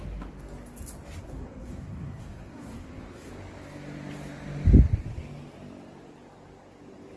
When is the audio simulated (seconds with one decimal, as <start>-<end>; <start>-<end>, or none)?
1.2-3.3